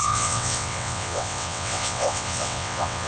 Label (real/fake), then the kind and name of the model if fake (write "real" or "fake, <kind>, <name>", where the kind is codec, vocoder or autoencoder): fake, vocoder, WaveNeXt